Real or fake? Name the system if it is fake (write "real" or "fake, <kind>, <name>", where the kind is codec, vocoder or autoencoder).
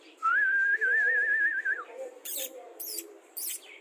fake, vocoder, BigVGAN v2